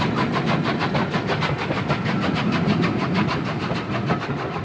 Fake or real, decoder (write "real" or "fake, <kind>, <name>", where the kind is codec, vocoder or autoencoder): real